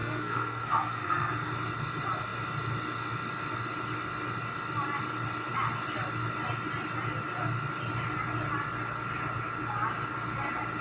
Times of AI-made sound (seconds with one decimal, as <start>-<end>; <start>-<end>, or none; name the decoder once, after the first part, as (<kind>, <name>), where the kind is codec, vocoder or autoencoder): 0.0-1.3 (codec, SNAC)